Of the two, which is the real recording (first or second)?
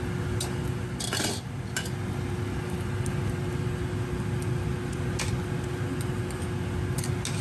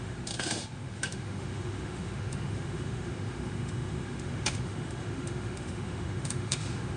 first